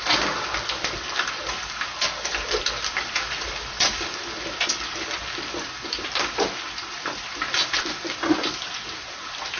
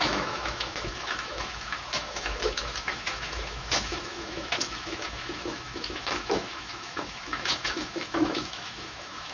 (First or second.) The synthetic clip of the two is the second